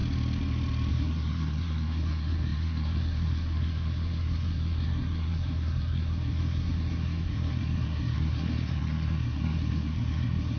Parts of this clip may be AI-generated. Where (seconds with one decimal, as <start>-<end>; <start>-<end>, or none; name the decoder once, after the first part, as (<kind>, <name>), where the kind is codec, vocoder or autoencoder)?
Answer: 0.9-10.6 (codec, SNAC)